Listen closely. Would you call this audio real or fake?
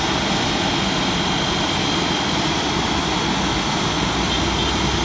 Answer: real